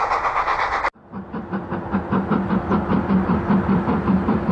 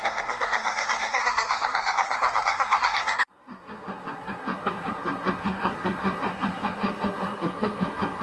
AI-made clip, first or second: second